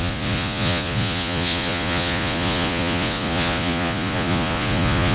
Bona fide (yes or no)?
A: no